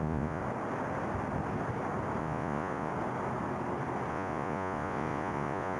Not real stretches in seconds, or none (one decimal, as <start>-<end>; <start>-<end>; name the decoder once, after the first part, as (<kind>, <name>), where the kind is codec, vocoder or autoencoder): 0.0-0.4 (vocoder, Vocos); 2.2-2.9; 4.1-5.8